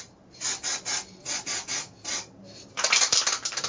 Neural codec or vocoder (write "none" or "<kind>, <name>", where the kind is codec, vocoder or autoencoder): none